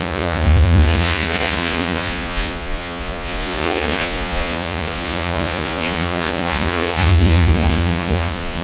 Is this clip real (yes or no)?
no